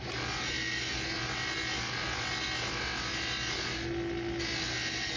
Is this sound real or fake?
real